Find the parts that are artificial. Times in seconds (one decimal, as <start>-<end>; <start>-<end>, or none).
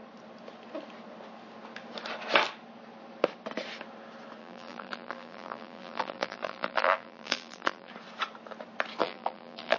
4.4-7.9; 9.0-9.8